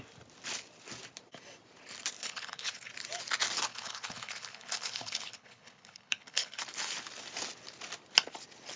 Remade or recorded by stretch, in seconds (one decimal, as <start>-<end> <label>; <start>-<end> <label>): 0.0-2.2 recorded; 2.2-2.9 remade; 2.9-3.7 recorded; 3.7-6.6 remade; 6.6-8.8 recorded